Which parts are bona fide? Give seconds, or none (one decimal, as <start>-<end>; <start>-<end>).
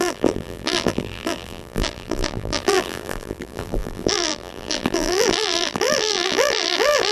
none